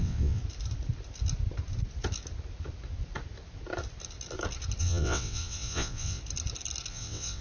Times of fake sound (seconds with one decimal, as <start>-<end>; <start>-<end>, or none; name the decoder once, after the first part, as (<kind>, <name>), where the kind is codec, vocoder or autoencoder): 0.0-0.4 (vocoder, WaveNeXt); 4.8-6.2; 6.9-7.4

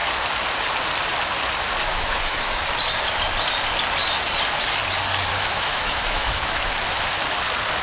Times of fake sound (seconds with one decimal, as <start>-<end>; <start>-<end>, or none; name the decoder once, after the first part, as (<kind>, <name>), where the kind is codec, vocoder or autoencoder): 1.9-2.6 (autoencoder, DAC-VAE); 5.3-6.6